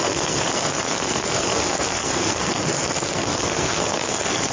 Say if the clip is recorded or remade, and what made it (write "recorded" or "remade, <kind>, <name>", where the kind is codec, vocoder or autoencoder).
remade, codec, SNAC